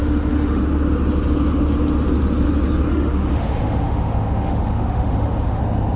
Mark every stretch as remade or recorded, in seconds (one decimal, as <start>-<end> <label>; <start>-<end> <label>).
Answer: 0.0-0.6 remade; 0.6-2.9 recorded; 2.9-5.6 remade; 5.6-6.0 recorded